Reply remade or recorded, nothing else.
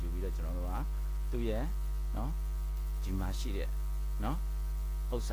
recorded